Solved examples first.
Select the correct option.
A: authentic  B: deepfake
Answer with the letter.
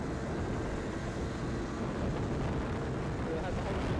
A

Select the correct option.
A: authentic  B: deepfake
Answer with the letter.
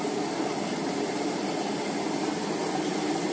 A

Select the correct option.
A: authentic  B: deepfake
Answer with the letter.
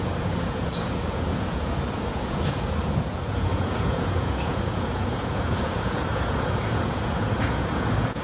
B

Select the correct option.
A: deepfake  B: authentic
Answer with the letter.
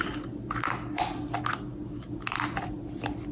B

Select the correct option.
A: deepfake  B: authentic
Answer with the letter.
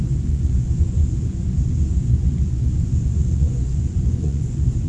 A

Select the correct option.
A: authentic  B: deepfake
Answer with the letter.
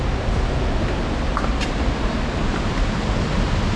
A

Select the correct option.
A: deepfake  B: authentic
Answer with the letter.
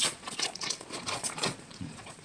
A